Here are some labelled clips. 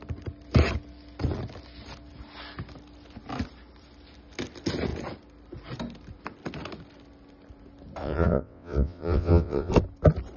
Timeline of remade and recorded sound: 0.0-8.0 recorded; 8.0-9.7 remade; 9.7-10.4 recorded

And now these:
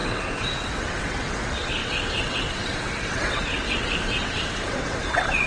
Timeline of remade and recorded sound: 0.0-5.5 remade

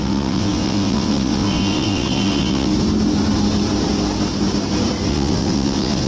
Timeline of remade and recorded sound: 0.0-2.7 remade; 2.7-5.1 recorded; 5.1-6.1 remade

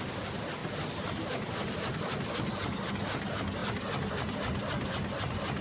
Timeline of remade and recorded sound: 0.0-5.6 recorded